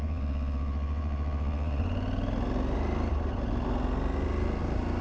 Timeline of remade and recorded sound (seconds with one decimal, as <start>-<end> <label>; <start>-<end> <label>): 0.0-1.8 remade; 1.8-5.0 recorded